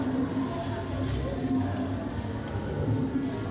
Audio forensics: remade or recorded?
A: recorded